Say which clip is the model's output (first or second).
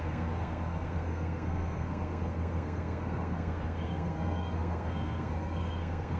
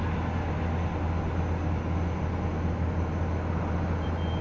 first